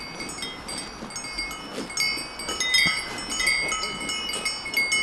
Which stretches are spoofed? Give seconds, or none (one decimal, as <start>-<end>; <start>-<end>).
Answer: none